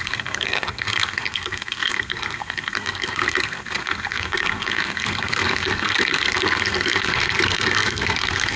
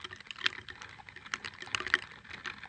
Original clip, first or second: second